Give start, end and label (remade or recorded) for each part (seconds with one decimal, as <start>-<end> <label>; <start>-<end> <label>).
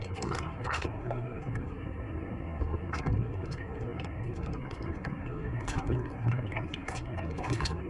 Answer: 0.0-7.9 remade